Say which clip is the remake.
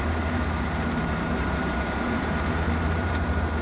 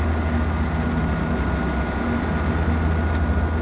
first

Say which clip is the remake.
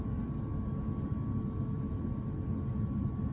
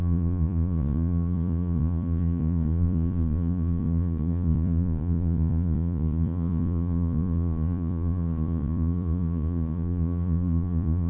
second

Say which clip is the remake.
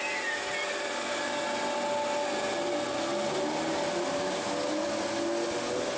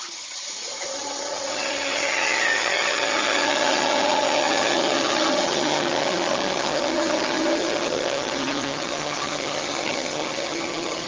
second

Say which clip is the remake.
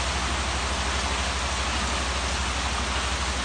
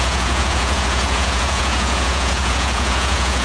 second